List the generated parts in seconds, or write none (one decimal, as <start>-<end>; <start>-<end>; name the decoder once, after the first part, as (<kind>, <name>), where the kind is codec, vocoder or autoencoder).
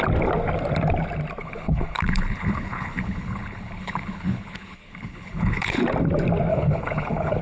1.4-5.8 (codec, HILCodec); 6.5-7.4